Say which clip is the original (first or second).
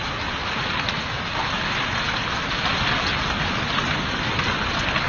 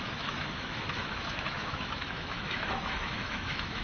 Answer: first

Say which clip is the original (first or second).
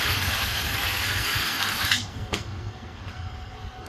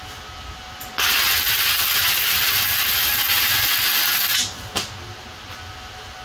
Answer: second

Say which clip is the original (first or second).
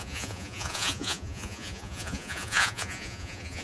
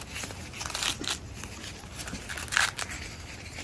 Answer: second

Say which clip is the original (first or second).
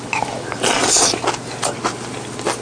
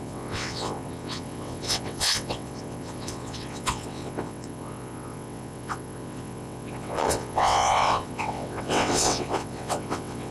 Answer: first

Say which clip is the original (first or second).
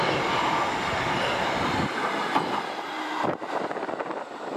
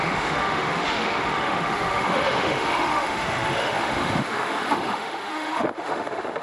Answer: first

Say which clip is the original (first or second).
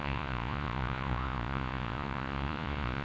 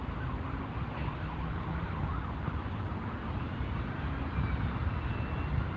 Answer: second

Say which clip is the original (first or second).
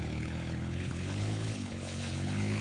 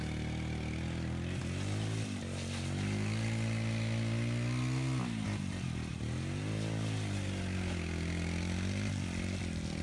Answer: second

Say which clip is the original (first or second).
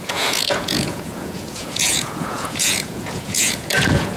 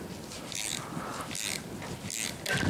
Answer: second